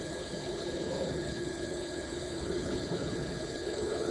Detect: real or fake fake